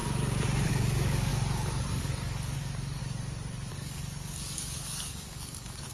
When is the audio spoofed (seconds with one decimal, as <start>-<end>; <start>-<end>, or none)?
0.7-1.3; 1.9-3.0; 3.7-5.9